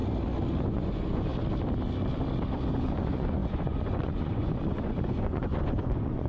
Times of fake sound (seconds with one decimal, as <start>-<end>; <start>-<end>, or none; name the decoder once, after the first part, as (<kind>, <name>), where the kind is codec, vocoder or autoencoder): 0.6-1.3 (vocoder, Vocos); 2.8-6.3